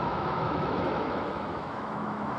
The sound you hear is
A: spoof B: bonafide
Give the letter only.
A